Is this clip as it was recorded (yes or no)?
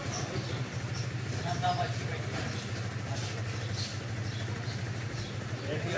yes